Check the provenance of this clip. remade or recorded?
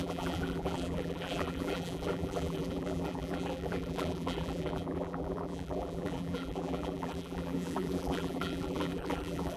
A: remade